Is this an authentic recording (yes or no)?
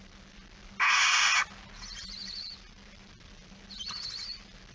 yes